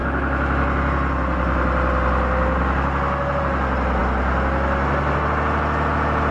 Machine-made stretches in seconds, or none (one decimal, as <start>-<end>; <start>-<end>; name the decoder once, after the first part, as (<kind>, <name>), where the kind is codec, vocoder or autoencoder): none